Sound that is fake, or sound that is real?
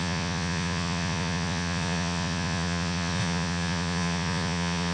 fake